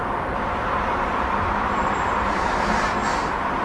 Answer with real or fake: fake